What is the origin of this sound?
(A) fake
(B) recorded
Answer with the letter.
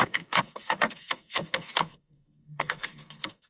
A